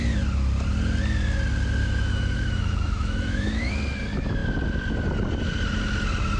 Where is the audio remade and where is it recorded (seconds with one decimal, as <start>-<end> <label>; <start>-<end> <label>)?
0.0-1.8 recorded; 1.8-3.7 remade; 3.7-6.4 recorded